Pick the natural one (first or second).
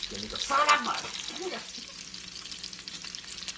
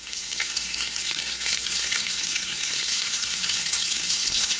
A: first